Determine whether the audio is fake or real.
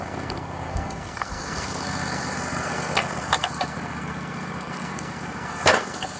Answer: fake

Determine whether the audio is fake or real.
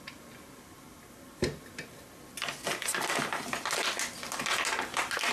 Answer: real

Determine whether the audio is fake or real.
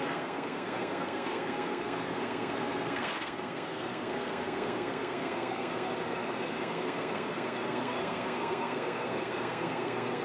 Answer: fake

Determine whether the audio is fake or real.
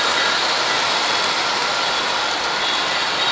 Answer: real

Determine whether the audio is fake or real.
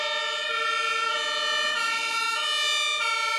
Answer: real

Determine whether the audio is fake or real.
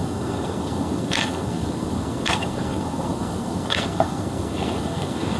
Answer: fake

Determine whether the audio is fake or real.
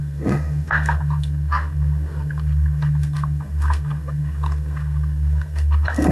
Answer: fake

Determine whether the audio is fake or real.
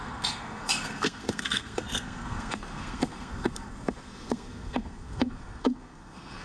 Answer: fake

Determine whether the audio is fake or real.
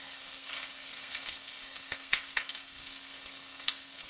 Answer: fake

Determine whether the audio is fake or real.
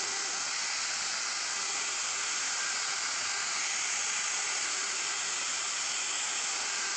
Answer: real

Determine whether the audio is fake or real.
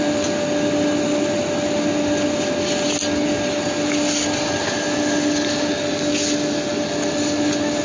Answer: real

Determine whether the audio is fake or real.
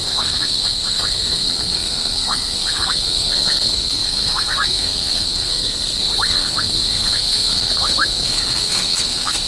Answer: fake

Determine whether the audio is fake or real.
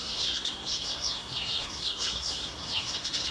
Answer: fake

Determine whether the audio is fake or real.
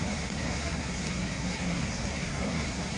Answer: fake